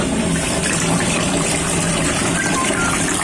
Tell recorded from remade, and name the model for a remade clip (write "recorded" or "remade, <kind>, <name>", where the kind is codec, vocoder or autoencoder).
recorded